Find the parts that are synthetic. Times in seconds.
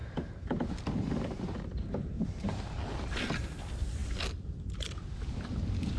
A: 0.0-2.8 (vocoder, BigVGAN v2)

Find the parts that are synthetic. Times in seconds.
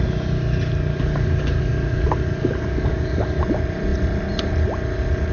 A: 0.9-3.4 (codec, DAC)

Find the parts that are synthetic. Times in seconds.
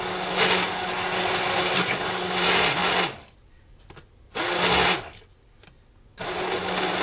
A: none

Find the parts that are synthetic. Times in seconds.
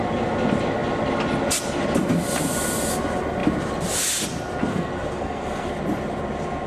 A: 4.7-5.7 (codec, SNAC)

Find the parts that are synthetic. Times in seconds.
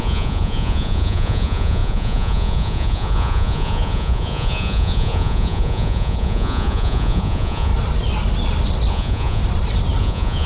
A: 0.0-7.7 (vocoder, Vocos); 8.9-9.4; 10.0-10.5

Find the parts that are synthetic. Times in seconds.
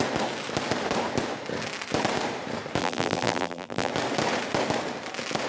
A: 2.8-3.9 (vocoder, BigVGAN v2)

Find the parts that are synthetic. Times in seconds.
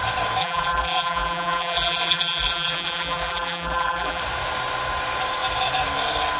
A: 0.4-4.2 (vocoder, BigVGAN v2)